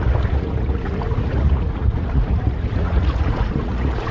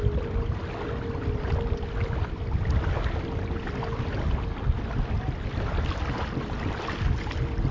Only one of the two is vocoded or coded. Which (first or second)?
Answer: first